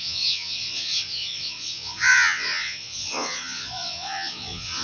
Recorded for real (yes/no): no